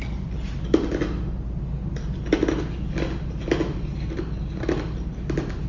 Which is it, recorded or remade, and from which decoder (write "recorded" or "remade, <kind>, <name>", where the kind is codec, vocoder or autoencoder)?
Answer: recorded